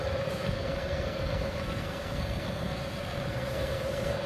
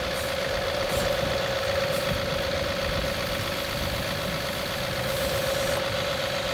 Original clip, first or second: second